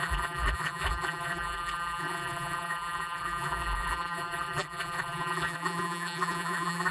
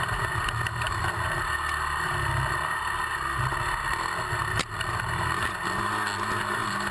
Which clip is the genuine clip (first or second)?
second